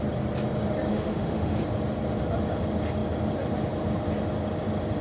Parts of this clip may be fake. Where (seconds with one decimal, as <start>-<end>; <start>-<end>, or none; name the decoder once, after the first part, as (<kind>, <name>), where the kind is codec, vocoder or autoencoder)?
0.9-1.6 (autoencoder, DAC-VAE)